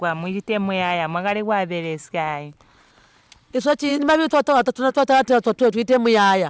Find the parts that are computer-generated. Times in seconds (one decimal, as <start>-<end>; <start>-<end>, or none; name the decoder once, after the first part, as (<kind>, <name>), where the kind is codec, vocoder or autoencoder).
none